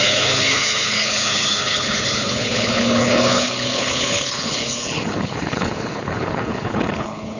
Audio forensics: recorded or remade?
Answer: remade